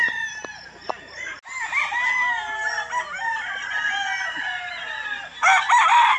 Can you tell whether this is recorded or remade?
recorded